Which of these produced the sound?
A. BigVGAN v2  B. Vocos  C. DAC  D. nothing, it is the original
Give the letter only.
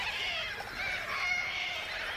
D